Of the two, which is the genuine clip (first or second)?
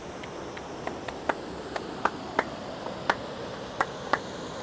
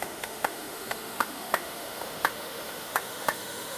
first